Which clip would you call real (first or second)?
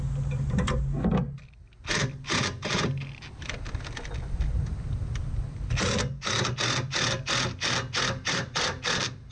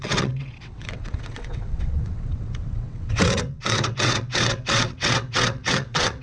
first